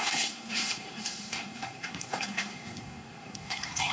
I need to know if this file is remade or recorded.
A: remade